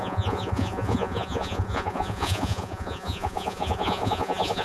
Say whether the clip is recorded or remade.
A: remade